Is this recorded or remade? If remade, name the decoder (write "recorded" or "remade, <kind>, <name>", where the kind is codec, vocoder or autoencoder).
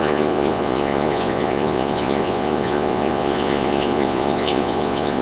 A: remade, vocoder, Vocos